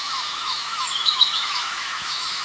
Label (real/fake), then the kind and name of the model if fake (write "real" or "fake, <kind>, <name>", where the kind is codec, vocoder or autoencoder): fake, autoencoder, DAC-VAE